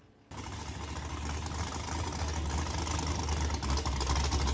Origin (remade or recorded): recorded